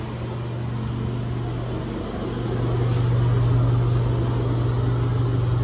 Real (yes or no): yes